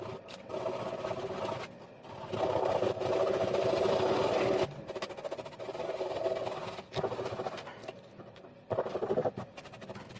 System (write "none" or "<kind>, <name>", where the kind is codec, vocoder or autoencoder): none